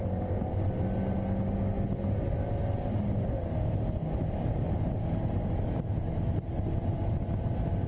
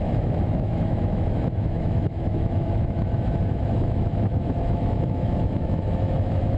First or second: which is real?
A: first